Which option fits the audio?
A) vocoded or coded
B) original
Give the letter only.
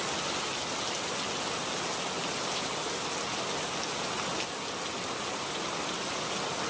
B